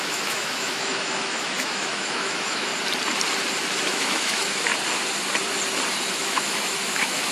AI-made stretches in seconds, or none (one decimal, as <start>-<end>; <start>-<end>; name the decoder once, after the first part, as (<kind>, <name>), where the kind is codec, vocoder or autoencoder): 0.0-2.7 (autoencoder, DAC-VAE); 3.8-4.7; 6.1-7.3